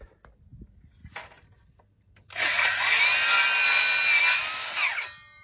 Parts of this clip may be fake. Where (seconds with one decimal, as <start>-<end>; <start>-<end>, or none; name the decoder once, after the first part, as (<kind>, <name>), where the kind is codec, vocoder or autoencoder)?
none